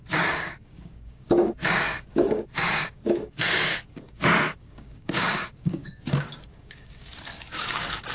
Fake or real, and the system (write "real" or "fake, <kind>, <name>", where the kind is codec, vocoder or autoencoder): fake, codec, DAC